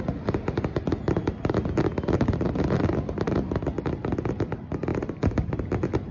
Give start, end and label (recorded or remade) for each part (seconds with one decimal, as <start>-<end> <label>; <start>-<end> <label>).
0.0-6.1 recorded

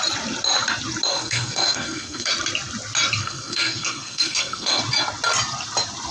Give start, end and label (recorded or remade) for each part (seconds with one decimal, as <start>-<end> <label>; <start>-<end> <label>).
0.0-1.1 recorded; 1.1-2.3 remade; 2.3-3.2 recorded; 3.2-4.8 remade; 4.8-6.1 recorded

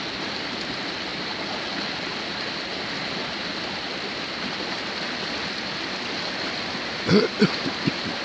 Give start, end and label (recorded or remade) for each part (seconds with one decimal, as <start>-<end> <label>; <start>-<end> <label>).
0.0-8.2 recorded